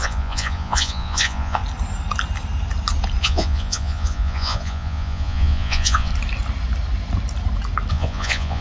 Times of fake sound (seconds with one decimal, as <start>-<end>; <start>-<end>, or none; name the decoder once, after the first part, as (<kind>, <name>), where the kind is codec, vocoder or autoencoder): 0.0-1.6 (vocoder, Vocos); 3.2-6.1; 7.9-8.6